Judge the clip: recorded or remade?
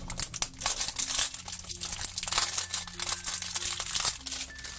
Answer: recorded